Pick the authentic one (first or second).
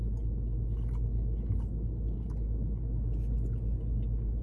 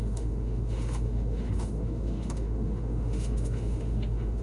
first